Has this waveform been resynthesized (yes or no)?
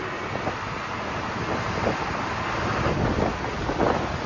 no